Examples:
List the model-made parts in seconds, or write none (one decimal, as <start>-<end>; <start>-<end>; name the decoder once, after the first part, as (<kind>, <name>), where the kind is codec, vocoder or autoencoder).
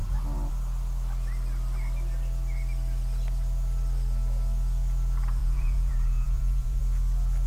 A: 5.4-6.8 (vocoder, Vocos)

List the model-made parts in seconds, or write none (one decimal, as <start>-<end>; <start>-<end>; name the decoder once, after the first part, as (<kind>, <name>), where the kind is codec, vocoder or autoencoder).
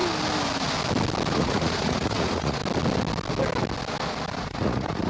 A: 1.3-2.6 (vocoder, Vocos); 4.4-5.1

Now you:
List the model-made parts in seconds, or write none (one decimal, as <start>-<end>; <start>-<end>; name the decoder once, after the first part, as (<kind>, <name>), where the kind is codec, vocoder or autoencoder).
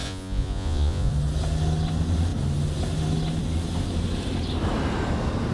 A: 0.0-1.1 (vocoder, Vocos)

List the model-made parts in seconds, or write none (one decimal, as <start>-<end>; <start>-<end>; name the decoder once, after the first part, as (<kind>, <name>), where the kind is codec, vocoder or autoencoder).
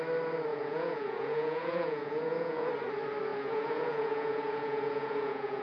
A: 0.5-2.7 (vocoder, Vocos); 3.3-5.6